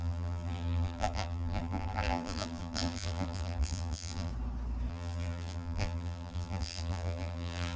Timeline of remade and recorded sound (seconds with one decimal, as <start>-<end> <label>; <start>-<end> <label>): 0.0-4.3 remade; 4.3-4.9 recorded; 4.9-7.8 remade